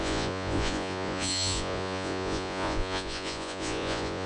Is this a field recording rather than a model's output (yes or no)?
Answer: no